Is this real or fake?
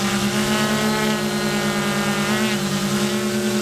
real